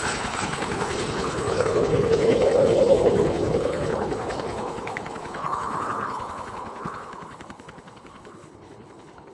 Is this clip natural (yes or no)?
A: no